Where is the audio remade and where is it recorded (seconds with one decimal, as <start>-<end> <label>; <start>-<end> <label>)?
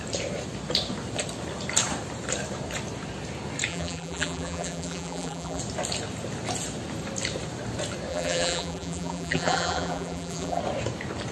0.0-3.7 recorded; 3.7-5.6 remade; 5.6-8.1 recorded; 8.1-10.6 remade; 10.6-11.3 recorded